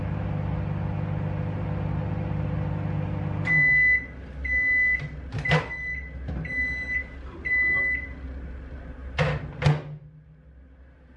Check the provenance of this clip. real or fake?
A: real